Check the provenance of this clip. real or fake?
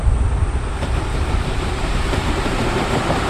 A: fake